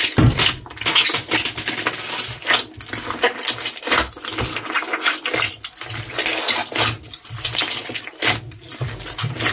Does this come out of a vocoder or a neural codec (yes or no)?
no